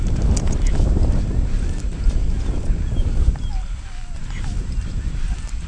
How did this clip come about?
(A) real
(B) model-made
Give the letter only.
A